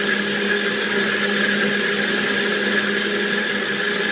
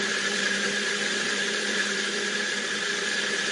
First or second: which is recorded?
first